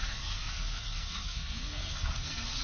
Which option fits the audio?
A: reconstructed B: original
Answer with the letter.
A